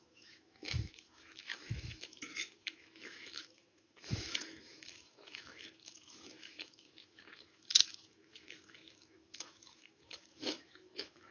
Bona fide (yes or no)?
no